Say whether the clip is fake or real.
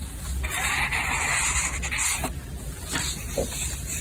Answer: real